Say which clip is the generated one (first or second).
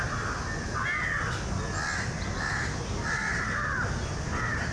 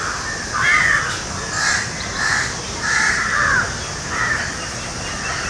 second